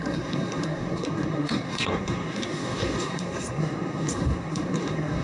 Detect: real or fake fake